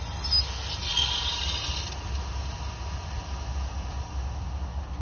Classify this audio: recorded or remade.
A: recorded